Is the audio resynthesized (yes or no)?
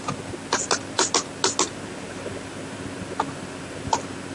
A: no